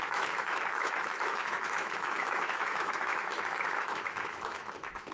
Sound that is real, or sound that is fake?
fake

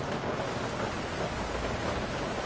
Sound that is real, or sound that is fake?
real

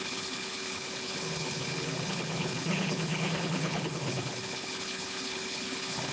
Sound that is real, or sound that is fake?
fake